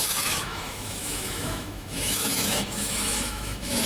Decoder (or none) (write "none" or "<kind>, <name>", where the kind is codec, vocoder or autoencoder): autoencoder, DAC-VAE